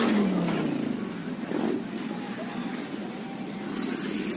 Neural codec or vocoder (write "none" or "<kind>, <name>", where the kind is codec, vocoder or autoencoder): none